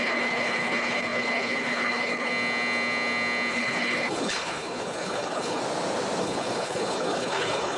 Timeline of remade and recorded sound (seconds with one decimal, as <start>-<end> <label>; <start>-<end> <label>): 0.0-2.3 remade; 2.3-3.5 recorded; 3.5-5.6 remade; 5.6-6.2 recorded; 6.2-7.8 remade